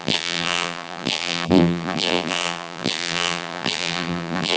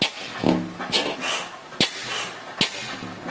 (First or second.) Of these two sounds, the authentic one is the second